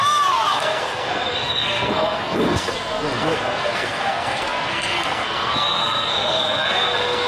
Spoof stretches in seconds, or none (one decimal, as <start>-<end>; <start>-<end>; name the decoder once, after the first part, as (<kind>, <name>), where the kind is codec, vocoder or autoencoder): 0.0-7.3 (codec, SNAC)